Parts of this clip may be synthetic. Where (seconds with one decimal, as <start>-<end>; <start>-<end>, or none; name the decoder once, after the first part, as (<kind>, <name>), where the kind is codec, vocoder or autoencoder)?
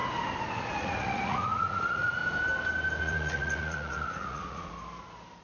0.5-2.2 (vocoder, Vocos); 3.0-4.7